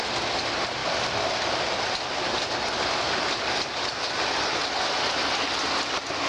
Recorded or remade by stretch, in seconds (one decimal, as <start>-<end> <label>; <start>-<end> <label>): 0.0-6.3 recorded